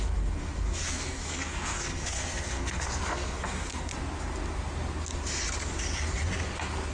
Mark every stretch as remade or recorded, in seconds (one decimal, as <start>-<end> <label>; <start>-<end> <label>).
0.0-3.9 remade; 3.9-6.9 recorded